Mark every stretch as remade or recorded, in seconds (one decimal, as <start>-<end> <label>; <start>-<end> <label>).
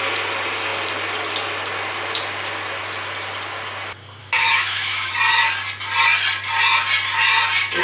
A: 0.0-4.2 recorded; 4.2-5.1 remade; 5.1-7.8 recorded